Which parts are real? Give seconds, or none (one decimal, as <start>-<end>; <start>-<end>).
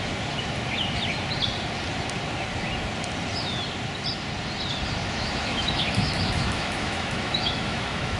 0.0-5.0